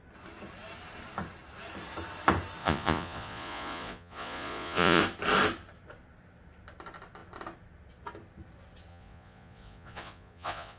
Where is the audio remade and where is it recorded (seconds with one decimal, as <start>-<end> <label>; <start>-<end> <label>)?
0.0-2.6 recorded; 2.6-5.0 remade; 5.0-8.9 recorded; 8.9-10.8 remade